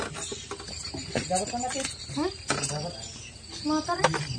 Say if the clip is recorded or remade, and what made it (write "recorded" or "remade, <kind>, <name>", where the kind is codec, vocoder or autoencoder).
recorded